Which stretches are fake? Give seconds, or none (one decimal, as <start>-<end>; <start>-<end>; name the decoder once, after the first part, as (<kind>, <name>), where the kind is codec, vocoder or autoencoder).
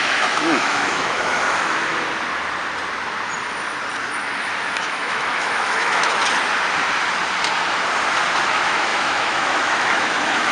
0.0-1.9 (autoencoder, DAC-VAE); 4.8-6.2; 8.5-10.5